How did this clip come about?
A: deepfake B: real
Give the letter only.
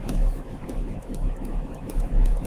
A